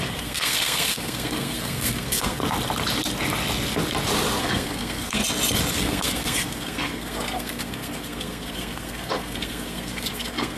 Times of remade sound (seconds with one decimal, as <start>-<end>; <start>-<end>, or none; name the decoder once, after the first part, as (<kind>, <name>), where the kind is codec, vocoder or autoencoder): 0.0-2.4 (codec, SNAC); 4.4-5.2; 5.7-10.6